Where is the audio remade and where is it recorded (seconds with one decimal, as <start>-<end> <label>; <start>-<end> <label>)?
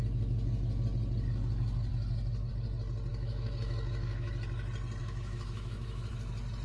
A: 0.0-3.1 recorded; 3.1-4.3 remade; 4.3-5.0 recorded; 5.0-6.1 remade; 6.1-6.6 recorded